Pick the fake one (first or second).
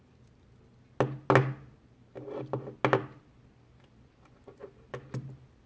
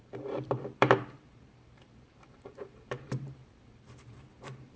second